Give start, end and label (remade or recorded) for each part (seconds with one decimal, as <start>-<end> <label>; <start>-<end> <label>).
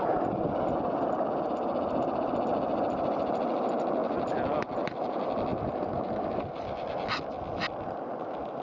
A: 0.0-4.0 recorded; 4.0-4.8 remade; 4.8-5.5 recorded; 5.5-6.1 remade; 6.1-8.6 recorded